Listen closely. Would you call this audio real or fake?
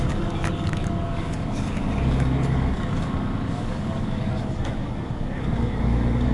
fake